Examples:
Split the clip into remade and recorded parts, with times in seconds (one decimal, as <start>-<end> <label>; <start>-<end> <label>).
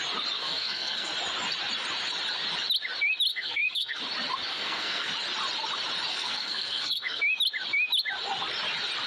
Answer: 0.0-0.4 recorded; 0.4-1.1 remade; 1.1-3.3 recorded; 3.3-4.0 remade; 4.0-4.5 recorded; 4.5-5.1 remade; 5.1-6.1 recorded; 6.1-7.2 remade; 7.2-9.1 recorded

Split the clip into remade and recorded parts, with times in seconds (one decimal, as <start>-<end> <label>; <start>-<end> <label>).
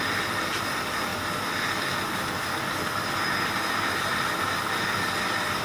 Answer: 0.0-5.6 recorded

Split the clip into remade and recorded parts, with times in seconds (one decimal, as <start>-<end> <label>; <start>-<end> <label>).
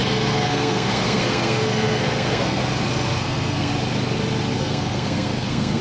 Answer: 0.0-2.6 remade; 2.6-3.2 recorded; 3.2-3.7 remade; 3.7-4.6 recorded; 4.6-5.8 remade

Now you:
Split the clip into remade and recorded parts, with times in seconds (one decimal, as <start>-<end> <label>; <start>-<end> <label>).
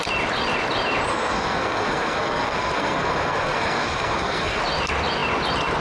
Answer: 0.0-1.1 recorded; 1.1-4.6 remade; 4.6-5.8 recorded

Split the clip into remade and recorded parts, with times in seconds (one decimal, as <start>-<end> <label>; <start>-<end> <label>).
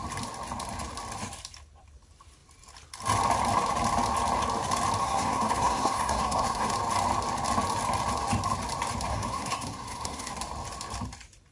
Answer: 0.0-5.0 recorded; 5.0-6.7 remade; 6.7-9.1 recorded; 9.1-10.3 remade; 10.3-11.5 recorded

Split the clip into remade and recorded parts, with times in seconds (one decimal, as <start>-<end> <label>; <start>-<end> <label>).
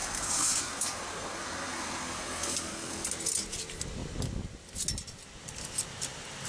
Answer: 0.0-3.1 remade; 3.1-6.5 recorded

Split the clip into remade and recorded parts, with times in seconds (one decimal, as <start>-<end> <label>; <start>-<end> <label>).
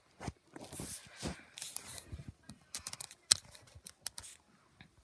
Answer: 0.0-5.0 recorded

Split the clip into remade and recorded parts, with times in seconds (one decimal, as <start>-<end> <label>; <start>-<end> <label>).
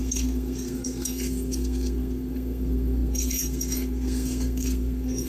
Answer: 0.0-5.3 remade